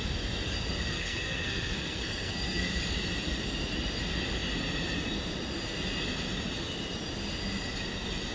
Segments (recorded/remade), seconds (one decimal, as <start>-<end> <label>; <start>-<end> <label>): 0.0-0.9 recorded; 0.9-2.8 remade; 2.8-8.3 recorded